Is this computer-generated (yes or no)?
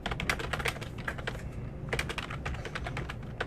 no